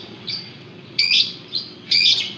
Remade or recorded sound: remade